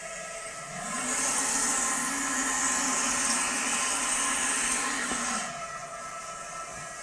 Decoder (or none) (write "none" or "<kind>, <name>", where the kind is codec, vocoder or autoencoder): none